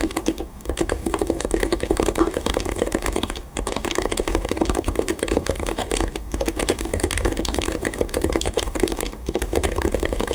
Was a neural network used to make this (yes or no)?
yes